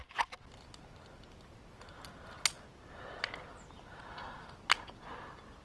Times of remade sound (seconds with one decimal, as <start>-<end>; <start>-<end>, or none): none